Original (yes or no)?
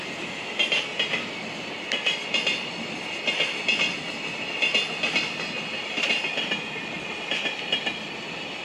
yes